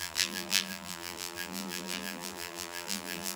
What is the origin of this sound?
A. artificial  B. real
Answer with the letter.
A